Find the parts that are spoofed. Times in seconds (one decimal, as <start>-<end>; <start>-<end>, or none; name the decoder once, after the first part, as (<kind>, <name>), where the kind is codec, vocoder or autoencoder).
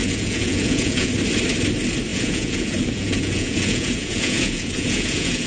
0.0-1.1 (vocoder, Vocos); 2.1-5.5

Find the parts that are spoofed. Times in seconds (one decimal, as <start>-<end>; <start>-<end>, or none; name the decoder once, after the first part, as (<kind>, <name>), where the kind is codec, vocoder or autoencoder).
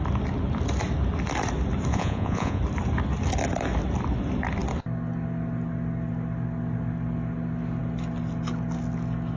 1.9-2.6 (vocoder, Vocos)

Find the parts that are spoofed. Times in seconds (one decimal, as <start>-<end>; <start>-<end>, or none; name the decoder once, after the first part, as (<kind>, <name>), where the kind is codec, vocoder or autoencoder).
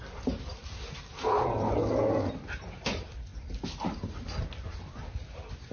none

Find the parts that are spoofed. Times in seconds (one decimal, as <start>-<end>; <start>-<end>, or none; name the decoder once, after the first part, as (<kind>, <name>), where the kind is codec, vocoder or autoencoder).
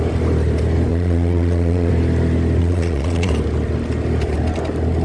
0.9-1.9 (vocoder, Vocos); 2.6-3.3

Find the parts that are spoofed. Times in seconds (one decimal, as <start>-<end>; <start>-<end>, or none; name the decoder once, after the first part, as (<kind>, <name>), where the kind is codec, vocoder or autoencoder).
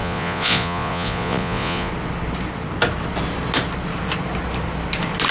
0.0-1.9 (vocoder, Vocos)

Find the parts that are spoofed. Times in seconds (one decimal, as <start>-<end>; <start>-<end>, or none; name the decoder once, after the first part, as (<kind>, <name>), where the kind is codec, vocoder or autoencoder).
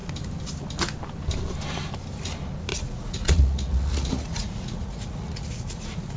2.7-6.2 (vocoder, Vocos)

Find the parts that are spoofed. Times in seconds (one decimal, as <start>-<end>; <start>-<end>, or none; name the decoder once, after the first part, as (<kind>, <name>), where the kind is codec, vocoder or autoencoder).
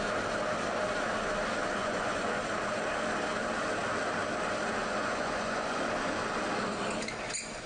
1.8-2.4 (vocoder, Vocos); 4.8-5.8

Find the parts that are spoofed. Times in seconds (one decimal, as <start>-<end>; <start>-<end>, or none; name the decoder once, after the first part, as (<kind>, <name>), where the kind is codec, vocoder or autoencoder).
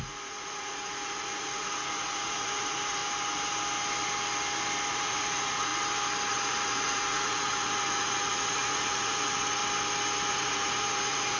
0.0-3.0 (vocoder, Vocos); 4.9-5.7; 6.3-9.6; 10.3-11.4